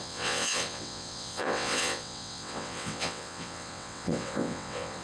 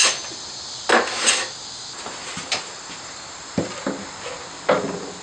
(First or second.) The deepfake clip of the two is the first